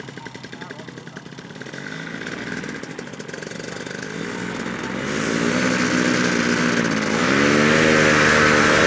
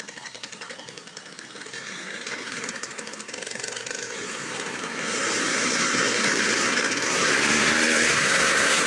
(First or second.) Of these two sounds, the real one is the first